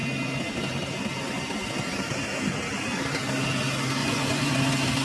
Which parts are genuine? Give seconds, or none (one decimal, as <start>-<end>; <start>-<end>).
0.0-4.0; 4.5-5.0